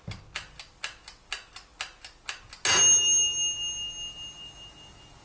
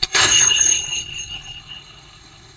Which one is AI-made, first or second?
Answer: second